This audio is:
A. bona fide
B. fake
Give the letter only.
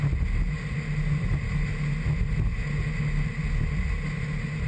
A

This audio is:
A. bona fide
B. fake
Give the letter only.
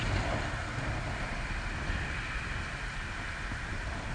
A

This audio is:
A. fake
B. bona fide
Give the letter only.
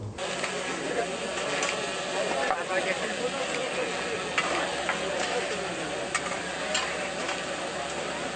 B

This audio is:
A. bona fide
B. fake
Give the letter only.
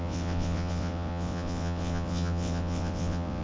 B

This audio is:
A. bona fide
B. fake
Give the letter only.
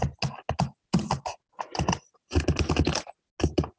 A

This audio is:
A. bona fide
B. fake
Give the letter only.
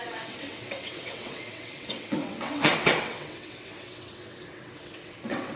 B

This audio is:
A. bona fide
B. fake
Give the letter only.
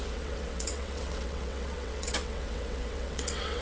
B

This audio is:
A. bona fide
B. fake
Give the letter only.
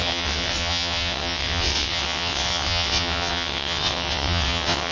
B